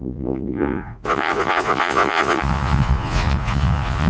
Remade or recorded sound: remade